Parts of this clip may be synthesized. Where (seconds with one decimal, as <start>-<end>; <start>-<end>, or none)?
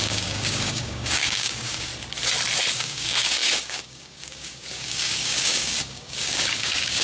0.0-1.9; 2.7-7.0